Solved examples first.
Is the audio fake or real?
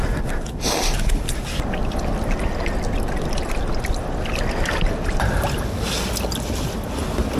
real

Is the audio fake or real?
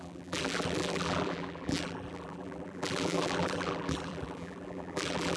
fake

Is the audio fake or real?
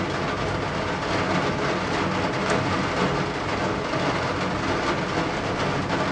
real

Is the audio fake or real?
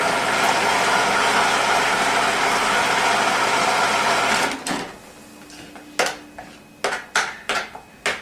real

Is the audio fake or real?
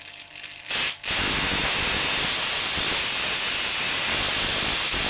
real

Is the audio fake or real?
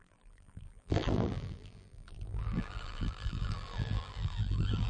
fake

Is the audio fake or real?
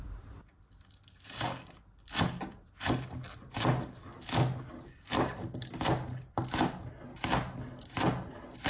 real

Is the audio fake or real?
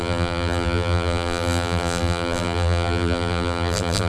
fake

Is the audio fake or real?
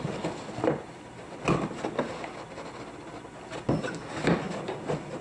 real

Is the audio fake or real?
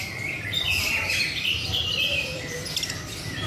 fake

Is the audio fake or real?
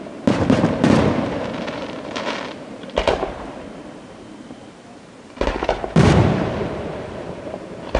fake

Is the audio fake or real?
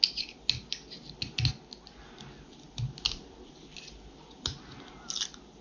real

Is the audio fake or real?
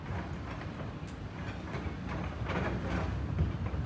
real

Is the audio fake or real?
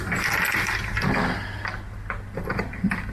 real